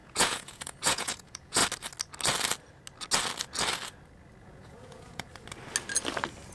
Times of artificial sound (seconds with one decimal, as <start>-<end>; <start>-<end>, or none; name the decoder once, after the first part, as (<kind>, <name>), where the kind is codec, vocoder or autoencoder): 0.0-1.6 (vocoder, Vocos); 4.4-5.3